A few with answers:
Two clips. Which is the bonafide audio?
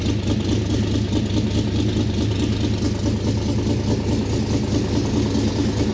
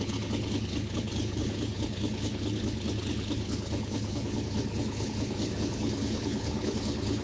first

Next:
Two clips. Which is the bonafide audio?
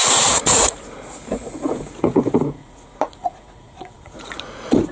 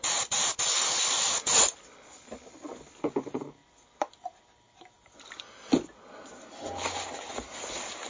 second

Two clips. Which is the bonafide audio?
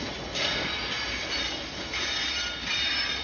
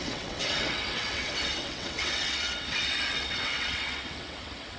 first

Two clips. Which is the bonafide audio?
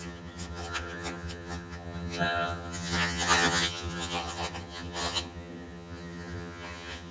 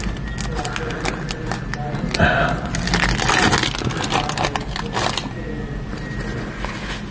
second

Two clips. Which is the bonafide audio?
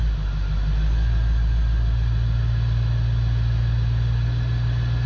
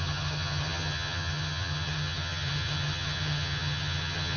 first